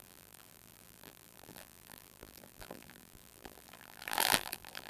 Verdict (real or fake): fake